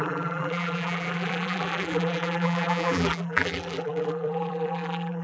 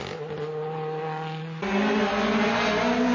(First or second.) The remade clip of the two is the first